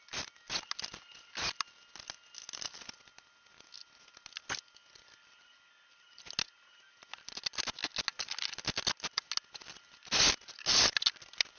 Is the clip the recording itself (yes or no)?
yes